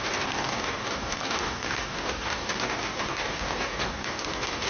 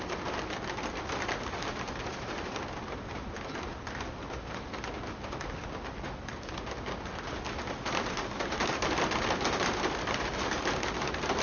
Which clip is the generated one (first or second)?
first